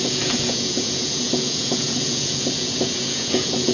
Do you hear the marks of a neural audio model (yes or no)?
yes